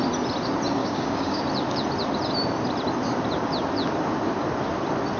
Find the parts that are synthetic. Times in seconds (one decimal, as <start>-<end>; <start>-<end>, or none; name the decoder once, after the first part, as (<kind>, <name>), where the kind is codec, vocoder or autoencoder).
0.8-1.4 (codec, DAC)